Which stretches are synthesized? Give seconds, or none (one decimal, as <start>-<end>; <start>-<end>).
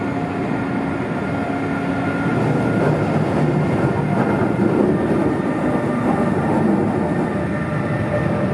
none